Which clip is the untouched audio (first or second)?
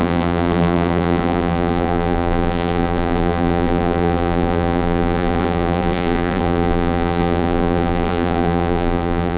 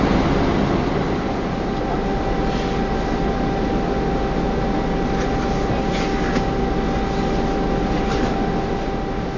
second